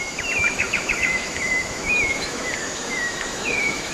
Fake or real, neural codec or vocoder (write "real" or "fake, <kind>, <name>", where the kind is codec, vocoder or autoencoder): fake, autoencoder, DAC-VAE